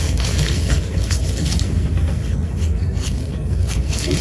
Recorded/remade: remade